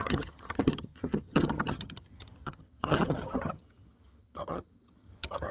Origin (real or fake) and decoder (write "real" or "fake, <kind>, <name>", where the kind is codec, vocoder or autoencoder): fake, vocoder, HiFi-GAN